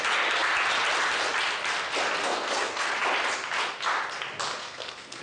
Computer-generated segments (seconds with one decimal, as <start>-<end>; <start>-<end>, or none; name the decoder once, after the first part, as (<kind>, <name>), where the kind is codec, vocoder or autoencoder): 2.2-2.9 (codec, SNAC); 4.6-5.2